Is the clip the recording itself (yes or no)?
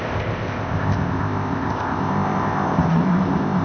no